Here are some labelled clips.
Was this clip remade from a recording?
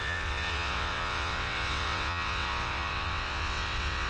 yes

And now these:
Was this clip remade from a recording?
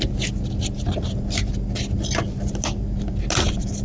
no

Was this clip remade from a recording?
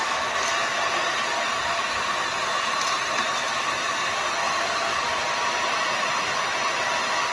no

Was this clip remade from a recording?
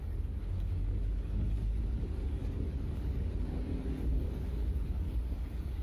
yes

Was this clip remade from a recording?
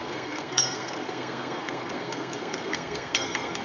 yes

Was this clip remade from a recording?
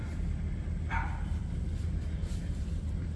no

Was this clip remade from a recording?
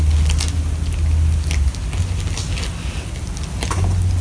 no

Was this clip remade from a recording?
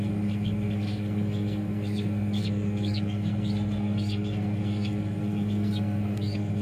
yes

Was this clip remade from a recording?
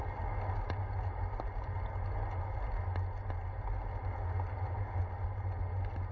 no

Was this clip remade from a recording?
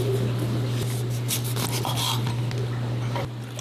no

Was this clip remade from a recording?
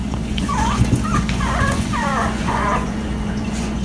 yes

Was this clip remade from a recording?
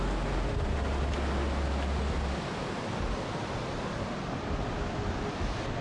no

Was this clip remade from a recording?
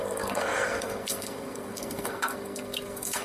yes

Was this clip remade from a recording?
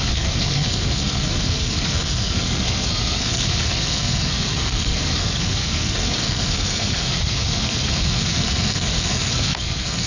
yes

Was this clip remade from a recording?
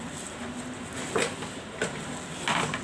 no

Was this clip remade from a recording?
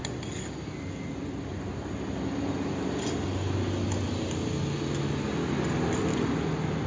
no